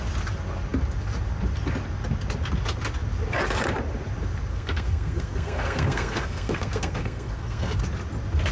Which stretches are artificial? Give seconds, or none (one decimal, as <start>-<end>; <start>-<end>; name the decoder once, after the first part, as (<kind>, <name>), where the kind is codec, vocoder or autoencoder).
4.5-7.8 (codec, SNAC)